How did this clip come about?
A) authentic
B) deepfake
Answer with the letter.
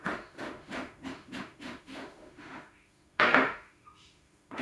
B